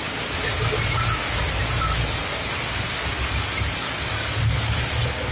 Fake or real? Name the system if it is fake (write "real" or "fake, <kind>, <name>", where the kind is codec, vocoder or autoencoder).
real